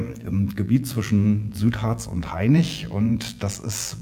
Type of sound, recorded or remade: remade